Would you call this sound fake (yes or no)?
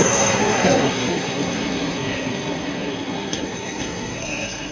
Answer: yes